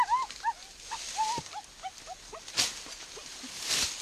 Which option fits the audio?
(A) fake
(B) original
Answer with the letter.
B